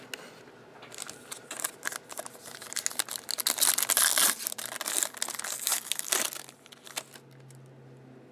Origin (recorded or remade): recorded